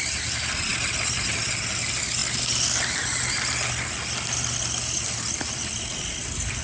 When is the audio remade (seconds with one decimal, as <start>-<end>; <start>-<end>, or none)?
none